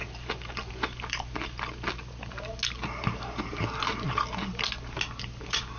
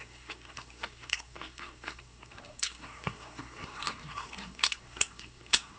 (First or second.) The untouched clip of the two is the first